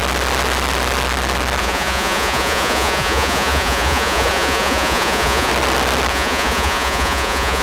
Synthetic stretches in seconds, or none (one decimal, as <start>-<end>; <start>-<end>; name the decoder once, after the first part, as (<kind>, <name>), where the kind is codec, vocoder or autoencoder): 1.6-5.5 (vocoder, Vocos); 6.1-7.6